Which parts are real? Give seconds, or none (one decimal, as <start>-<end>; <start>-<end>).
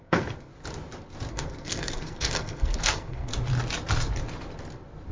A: 0.5-1.3; 3.3-5.1